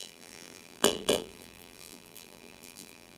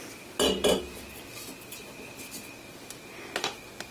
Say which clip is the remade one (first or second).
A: first